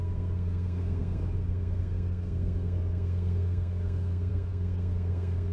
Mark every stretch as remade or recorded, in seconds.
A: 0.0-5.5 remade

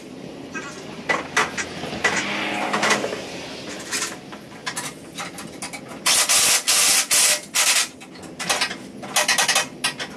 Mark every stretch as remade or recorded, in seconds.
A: 0.0-10.2 recorded

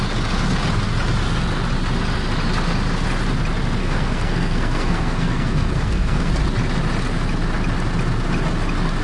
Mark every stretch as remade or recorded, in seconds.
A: 0.0-3.8 recorded; 3.8-6.3 remade; 6.3-9.0 recorded